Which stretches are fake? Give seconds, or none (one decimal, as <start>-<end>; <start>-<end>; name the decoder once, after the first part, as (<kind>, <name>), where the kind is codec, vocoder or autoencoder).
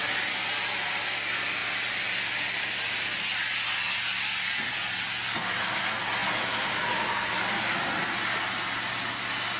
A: none